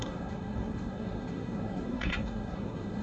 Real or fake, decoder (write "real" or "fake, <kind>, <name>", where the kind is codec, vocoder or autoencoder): fake, codec, SNAC